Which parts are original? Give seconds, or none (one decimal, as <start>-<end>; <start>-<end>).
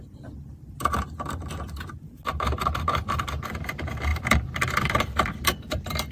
0.0-4.1